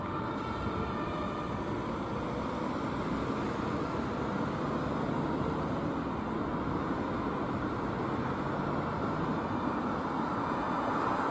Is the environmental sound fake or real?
real